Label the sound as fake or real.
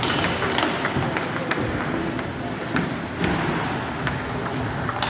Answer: real